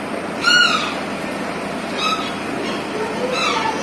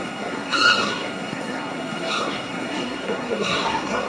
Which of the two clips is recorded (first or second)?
first